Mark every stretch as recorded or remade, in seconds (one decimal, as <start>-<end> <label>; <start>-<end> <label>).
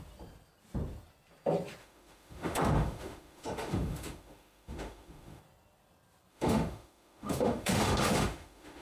0.0-1.8 recorded; 1.8-5.4 remade; 5.4-6.3 recorded; 6.3-8.8 remade